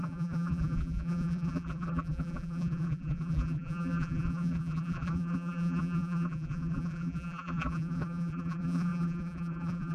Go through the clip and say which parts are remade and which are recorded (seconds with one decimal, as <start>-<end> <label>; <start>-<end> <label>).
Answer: 0.0-9.9 remade

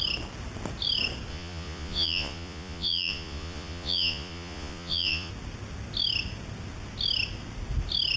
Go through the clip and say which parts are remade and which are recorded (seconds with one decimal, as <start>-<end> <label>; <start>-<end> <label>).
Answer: 0.0-1.3 recorded; 1.3-5.3 remade; 5.3-8.2 recorded

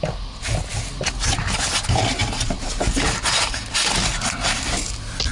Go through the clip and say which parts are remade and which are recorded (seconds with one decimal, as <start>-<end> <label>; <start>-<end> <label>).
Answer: 0.0-5.3 recorded

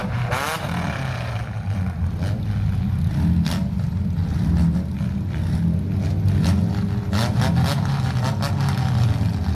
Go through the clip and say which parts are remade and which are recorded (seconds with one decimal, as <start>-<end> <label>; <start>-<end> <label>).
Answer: 0.0-2.0 remade; 2.0-9.5 recorded